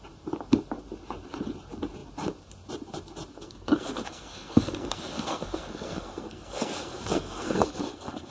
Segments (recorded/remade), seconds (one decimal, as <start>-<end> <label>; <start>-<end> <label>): 0.0-3.3 recorded; 3.3-8.3 remade